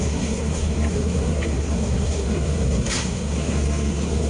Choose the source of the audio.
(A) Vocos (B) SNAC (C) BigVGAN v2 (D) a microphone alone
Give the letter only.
B